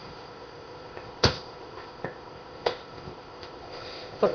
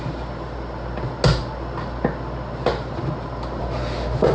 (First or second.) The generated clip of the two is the first